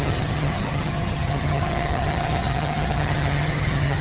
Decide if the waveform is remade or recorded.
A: remade